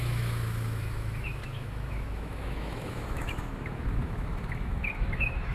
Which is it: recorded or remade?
remade